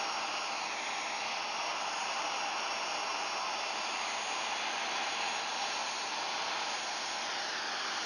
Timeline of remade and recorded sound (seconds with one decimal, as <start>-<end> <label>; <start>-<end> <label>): 0.0-8.1 recorded